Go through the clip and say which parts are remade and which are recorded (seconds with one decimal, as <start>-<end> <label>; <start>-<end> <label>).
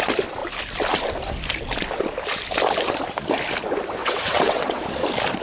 0.0-4.0 recorded; 4.0-4.8 remade; 4.8-5.4 recorded